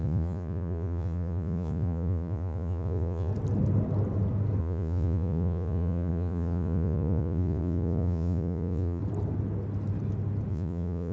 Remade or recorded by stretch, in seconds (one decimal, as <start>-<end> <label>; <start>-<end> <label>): 0.0-3.3 remade; 3.3-4.6 recorded; 4.6-9.0 remade; 9.0-10.5 recorded; 10.5-11.1 remade